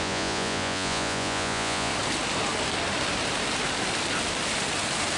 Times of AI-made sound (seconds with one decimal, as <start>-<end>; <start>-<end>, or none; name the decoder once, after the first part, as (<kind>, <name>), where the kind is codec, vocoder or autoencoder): 0.0-1.9 (vocoder, Vocos)